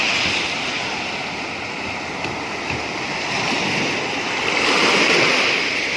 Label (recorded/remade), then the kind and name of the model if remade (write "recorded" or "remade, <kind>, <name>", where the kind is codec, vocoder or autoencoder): recorded